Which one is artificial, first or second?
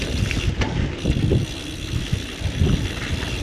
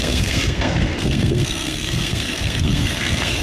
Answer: second